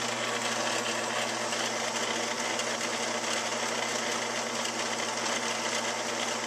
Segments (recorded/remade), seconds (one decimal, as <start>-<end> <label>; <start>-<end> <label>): 0.0-6.5 recorded